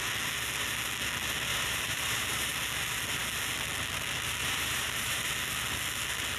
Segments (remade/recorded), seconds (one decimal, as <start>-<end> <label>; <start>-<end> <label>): 0.0-1.5 recorded; 1.5-2.5 remade; 2.5-4.4 recorded; 4.4-5.3 remade; 5.3-6.4 recorded